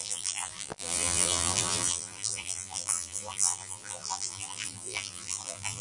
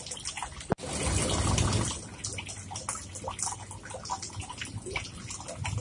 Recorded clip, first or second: second